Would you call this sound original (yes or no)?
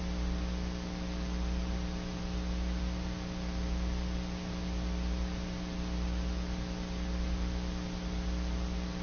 yes